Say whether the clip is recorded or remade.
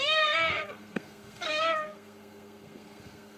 remade